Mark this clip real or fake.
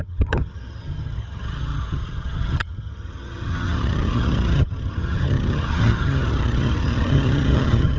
fake